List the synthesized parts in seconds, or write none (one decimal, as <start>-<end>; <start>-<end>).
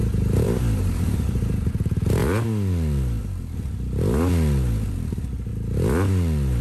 0.0-1.7